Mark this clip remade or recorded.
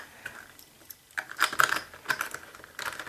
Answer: recorded